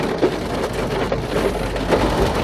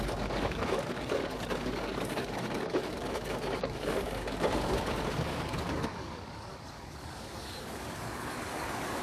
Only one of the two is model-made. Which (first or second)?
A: second